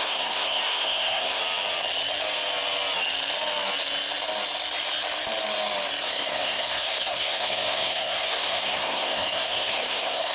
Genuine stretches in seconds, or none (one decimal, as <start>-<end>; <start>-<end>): 1.4-6.0